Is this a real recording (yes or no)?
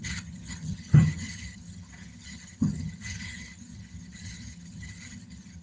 no